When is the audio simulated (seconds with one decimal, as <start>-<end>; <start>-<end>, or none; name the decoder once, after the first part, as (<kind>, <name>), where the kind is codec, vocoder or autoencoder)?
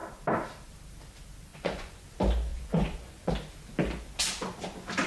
1.5-2.1 (vocoder, Vocos); 2.5-3.3